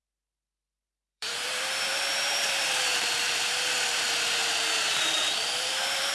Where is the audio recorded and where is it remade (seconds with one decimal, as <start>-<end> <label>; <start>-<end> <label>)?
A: 0.0-4.4 remade; 4.4-4.9 recorded; 4.9-6.1 remade